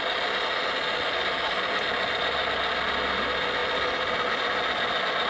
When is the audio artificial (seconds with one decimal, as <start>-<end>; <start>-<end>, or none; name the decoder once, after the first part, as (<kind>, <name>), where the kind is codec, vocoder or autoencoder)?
none